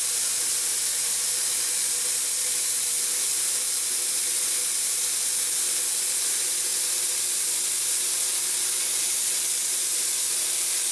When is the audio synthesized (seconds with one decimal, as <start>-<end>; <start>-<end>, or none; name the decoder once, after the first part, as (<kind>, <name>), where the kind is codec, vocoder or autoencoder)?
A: 0.0-3.3 (vocoder, BigVGAN v2); 4.7-6.7; 9.1-10.9

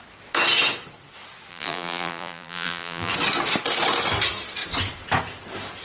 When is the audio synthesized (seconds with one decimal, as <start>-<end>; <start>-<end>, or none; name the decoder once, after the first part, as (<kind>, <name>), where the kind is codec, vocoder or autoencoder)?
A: 1.5-3.1 (vocoder, BigVGAN v2)